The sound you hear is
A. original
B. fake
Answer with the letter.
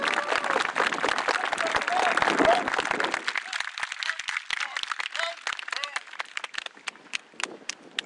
A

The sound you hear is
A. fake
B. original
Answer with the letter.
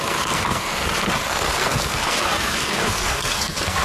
A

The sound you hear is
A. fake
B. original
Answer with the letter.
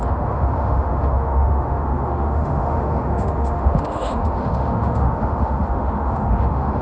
A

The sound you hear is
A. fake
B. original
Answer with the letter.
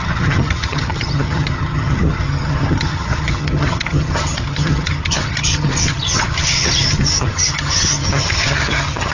A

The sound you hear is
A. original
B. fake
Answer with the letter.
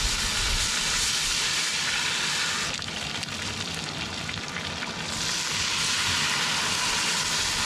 A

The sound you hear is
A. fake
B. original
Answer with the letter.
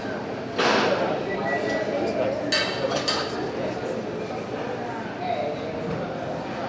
B